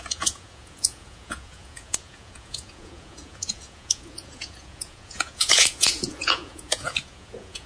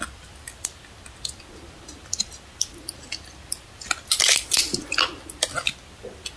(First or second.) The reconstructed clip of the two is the first